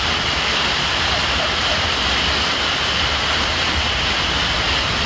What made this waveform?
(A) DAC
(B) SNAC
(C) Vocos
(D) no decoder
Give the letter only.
D